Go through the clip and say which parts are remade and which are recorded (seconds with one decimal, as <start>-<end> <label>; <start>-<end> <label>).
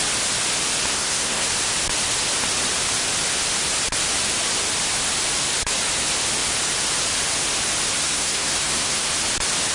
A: 0.0-0.9 recorded; 0.9-1.5 remade; 1.5-8.0 recorded; 8.0-9.1 remade; 9.1-9.7 recorded